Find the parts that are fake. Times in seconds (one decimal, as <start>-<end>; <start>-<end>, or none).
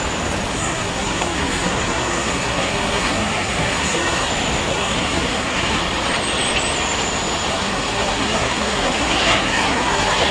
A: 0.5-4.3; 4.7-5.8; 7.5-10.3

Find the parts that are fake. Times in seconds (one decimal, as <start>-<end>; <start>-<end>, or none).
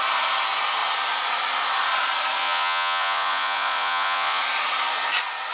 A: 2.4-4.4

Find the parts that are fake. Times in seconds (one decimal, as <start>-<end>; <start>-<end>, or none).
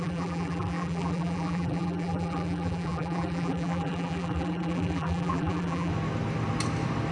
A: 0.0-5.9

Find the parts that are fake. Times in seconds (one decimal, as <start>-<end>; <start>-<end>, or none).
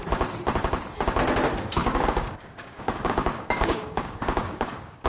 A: 1.8-5.1